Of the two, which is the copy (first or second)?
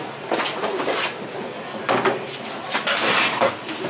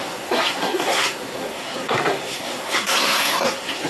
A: second